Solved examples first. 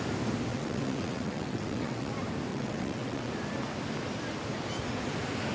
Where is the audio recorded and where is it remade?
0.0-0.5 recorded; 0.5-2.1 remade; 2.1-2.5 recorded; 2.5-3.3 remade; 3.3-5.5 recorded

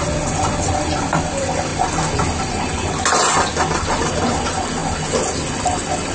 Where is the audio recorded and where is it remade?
0.0-6.1 recorded

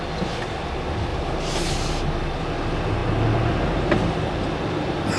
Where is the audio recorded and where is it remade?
0.0-5.2 recorded

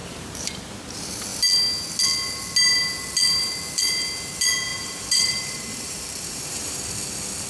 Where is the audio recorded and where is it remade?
0.0-0.8 remade; 0.8-4.7 recorded; 4.7-6.8 remade; 6.8-7.5 recorded

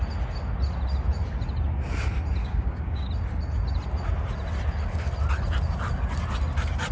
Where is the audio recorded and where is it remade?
0.0-2.4 recorded; 2.4-3.1 remade; 3.1-6.9 recorded